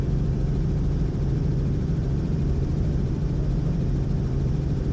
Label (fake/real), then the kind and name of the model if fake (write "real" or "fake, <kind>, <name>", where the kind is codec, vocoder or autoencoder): fake, vocoder, BigVGAN v2